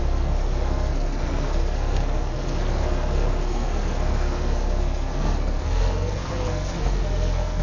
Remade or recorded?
remade